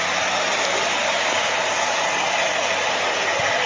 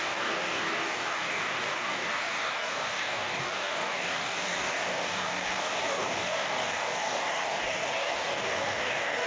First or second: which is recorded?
first